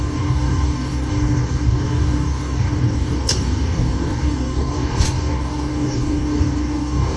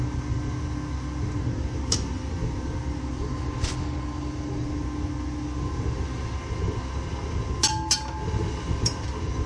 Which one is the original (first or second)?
second